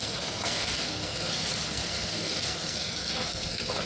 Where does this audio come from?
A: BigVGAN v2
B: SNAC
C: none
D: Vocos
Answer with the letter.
B